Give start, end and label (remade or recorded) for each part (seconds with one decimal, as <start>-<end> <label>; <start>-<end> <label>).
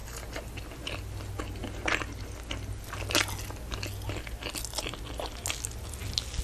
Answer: 0.0-6.4 recorded